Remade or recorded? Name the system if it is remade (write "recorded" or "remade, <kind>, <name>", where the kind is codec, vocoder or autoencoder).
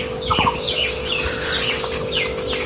recorded